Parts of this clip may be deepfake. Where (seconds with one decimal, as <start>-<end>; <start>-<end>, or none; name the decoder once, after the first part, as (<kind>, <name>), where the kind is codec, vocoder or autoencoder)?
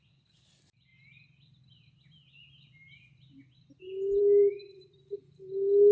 none